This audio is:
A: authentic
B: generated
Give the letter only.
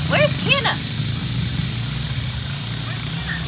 A